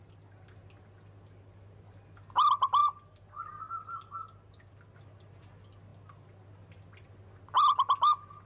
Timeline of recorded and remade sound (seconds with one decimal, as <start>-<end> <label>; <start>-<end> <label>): 0.0-8.5 recorded